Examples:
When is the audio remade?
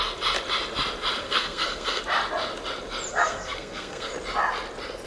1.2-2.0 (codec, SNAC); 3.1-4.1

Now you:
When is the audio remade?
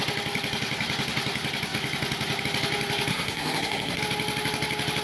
3.1-4.0 (codec, SNAC)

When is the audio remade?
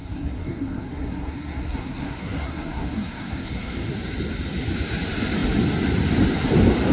0.0-3.9 (codec, SNAC)